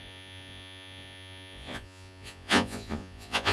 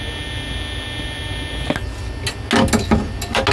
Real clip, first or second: second